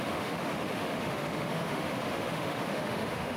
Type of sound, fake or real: fake